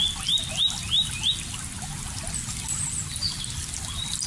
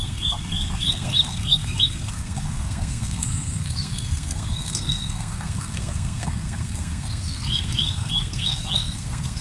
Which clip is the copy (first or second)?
second